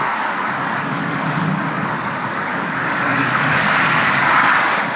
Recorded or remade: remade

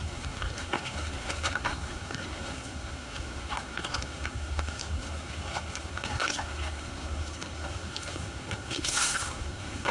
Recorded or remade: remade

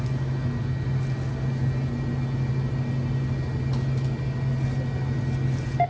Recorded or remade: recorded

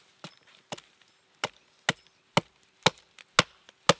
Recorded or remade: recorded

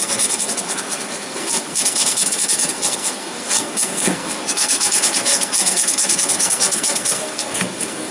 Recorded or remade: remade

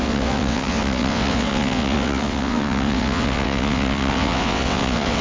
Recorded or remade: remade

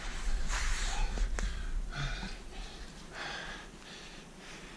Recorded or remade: recorded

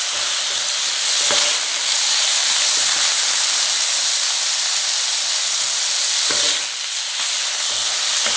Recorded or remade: recorded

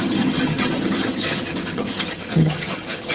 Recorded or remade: remade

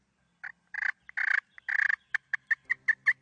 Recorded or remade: recorded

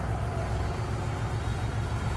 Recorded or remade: recorded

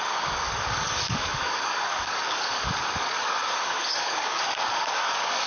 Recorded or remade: remade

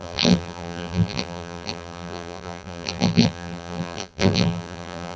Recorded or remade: remade